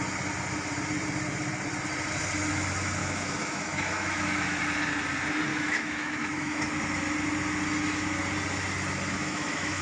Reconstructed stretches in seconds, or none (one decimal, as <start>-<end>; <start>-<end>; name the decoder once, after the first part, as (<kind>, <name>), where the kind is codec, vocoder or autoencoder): 3.0-4.6 (autoencoder, DAC-VAE); 5.5-6.8; 9.2-9.8